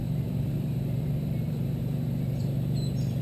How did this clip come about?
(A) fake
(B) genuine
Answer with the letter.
A